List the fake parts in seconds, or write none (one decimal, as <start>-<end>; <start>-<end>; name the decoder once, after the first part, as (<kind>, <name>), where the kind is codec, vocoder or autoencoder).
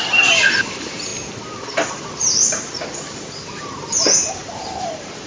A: 0.0-1.1 (vocoder, BigVGAN v2); 4.3-5.3